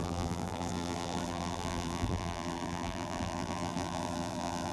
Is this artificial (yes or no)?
yes